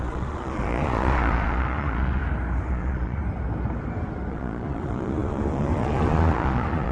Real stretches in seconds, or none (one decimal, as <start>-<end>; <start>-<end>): 2.2-2.7; 3.2-4.3